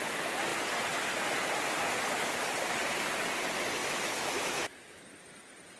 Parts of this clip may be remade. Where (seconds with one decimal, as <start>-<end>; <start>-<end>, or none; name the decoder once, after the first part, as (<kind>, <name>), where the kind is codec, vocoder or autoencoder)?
3.8-5.0 (autoencoder, DAC-VAE)